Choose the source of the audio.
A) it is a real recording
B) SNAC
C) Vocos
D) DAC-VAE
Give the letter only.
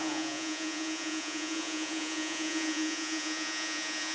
C